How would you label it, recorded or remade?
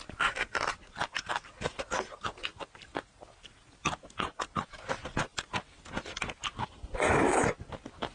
recorded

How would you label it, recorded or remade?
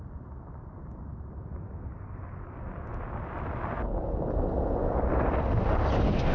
recorded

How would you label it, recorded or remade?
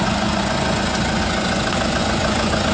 remade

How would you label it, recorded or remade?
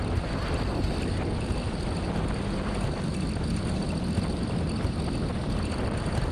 recorded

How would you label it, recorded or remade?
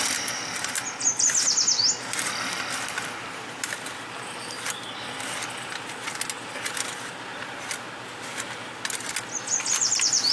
recorded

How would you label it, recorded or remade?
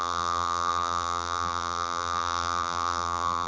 remade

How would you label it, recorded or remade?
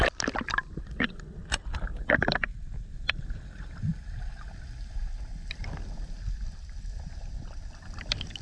recorded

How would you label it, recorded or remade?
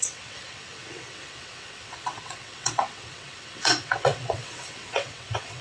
remade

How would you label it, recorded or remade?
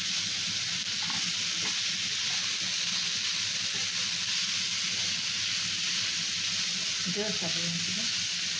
recorded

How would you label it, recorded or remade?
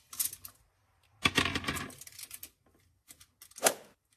recorded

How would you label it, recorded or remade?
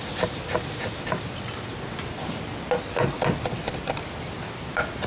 recorded